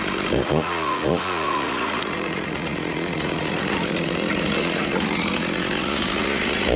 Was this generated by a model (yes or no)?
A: yes